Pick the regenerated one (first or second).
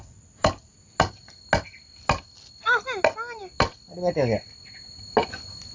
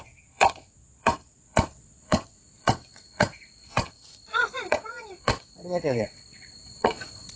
second